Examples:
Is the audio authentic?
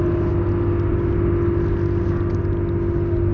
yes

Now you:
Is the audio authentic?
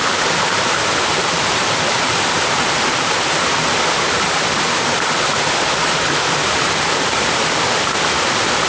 no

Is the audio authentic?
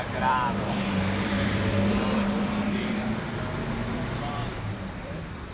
no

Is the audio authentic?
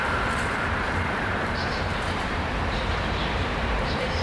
no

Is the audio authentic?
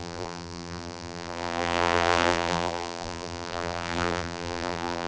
no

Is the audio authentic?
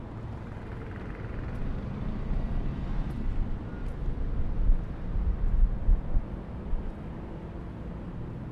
yes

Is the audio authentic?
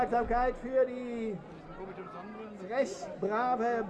yes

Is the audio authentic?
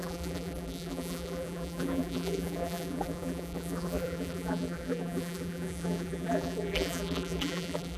no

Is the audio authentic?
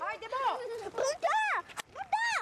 yes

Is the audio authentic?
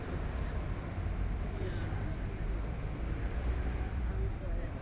no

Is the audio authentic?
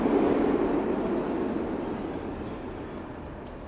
yes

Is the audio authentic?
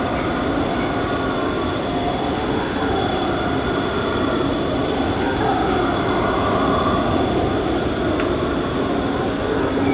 yes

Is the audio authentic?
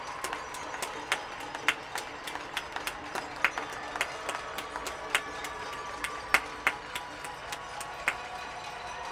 yes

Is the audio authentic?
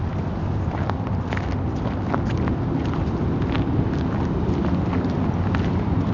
yes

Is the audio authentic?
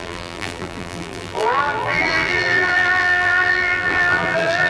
no